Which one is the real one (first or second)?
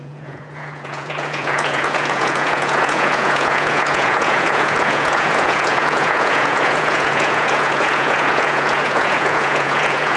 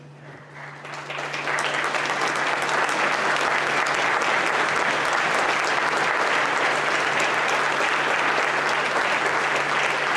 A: second